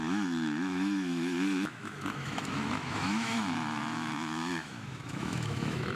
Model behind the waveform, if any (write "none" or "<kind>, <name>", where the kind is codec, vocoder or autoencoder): autoencoder, DAC-VAE